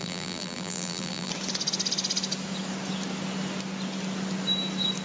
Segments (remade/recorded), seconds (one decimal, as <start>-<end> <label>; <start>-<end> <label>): 0.0-1.3 remade; 1.3-5.0 recorded